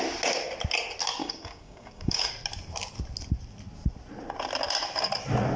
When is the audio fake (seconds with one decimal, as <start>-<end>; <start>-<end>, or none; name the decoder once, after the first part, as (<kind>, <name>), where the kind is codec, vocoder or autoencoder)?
1.2-2.3 (codec, DAC)